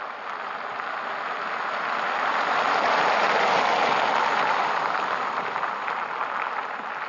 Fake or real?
real